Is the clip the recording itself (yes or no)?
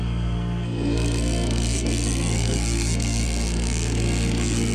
no